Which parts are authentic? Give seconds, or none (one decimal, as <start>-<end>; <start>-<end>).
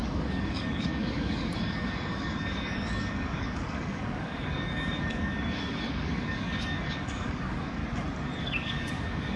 7.8-8.4